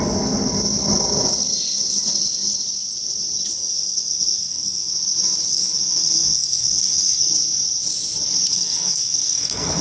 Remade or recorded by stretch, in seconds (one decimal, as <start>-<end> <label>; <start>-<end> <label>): 0.0-3.6 recorded; 3.6-4.9 remade; 4.9-5.5 recorded; 5.5-7.3 remade; 7.3-8.5 recorded; 8.5-9.8 remade